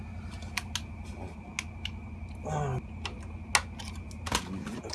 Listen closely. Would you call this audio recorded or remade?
recorded